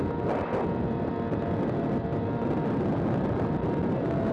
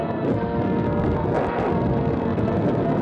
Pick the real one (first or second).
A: first